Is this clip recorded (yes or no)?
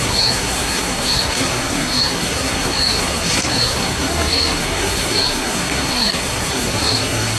no